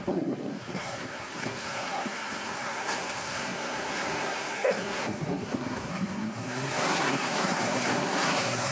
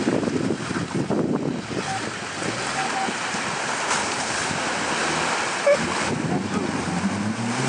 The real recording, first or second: second